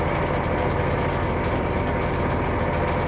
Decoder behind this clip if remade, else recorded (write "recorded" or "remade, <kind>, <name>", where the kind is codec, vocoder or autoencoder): recorded